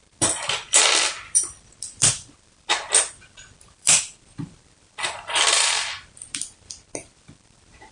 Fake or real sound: fake